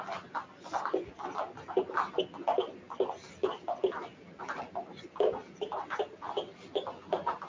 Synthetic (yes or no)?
no